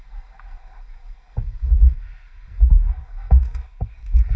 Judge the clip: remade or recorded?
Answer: remade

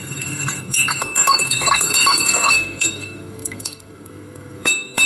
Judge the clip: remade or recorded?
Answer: remade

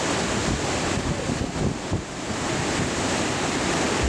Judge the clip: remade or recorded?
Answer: recorded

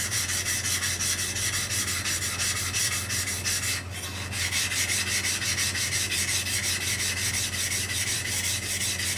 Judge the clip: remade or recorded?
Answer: recorded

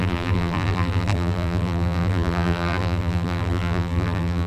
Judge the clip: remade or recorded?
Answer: remade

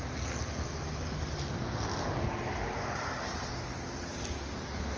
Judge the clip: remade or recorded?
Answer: recorded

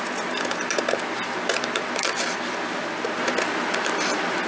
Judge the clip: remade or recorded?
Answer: recorded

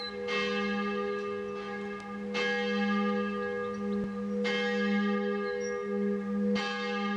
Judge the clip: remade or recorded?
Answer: recorded